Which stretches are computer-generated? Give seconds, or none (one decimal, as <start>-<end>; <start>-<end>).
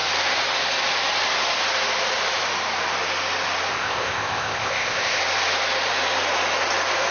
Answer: 3.7-5.2